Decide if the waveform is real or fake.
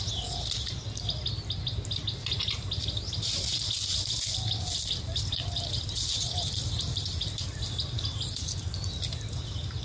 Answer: real